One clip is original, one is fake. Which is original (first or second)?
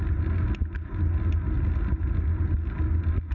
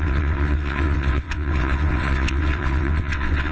first